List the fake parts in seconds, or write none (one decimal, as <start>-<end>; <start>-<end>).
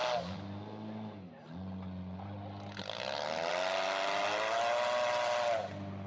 none